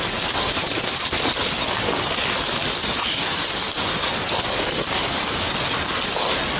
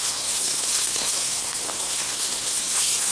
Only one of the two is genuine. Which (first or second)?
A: first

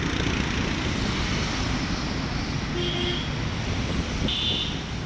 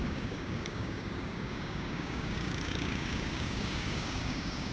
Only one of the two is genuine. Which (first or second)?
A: first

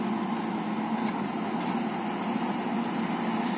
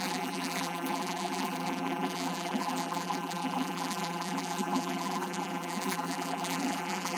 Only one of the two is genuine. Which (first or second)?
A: first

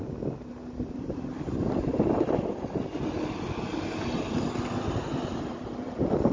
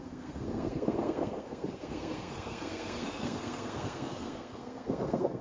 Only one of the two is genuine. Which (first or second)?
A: first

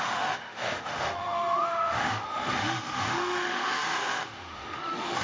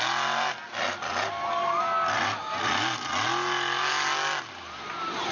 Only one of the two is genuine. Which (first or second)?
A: second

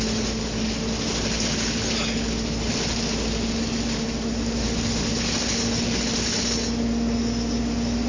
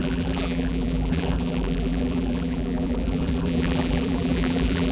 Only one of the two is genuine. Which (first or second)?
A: first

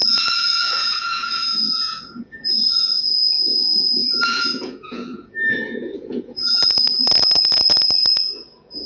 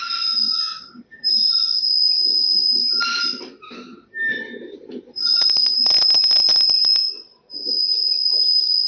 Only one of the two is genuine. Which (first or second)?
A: second